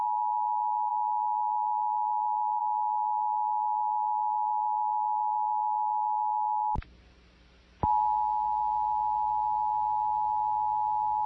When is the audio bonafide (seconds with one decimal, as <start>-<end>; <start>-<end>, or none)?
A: 0.0-11.3